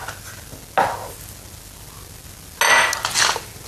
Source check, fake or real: real